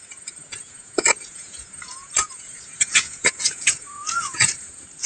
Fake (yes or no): yes